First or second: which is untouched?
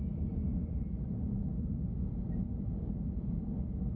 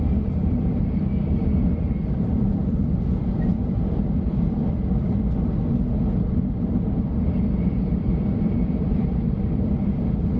first